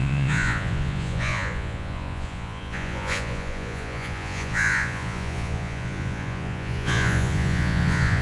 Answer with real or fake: fake